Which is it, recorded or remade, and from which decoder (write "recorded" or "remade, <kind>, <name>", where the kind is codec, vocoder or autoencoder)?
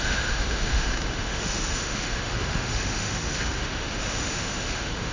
remade, autoencoder, DAC-VAE